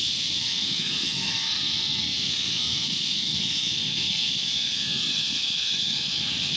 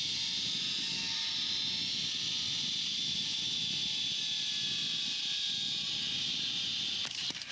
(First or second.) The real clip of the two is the second